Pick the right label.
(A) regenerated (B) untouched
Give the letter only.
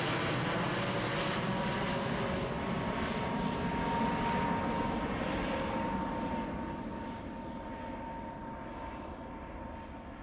B